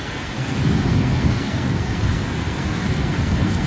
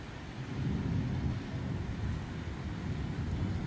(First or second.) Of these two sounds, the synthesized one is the first